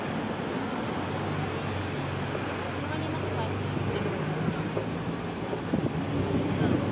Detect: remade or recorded recorded